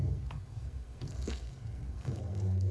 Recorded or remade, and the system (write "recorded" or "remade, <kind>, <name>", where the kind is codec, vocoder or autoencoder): remade, codec, SNAC